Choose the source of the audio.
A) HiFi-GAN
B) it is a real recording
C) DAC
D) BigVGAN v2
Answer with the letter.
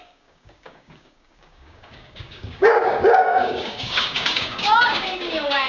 C